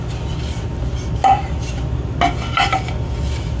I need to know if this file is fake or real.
real